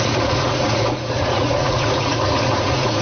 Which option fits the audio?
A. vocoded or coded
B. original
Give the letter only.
A